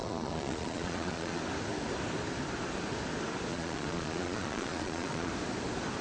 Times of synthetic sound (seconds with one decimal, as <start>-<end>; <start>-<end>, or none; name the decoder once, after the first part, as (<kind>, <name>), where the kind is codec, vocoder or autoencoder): 0.0-1.4 (vocoder, Vocos); 3.5-5.3